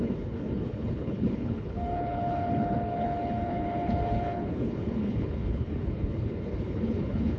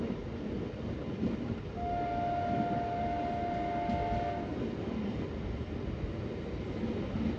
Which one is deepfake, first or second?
first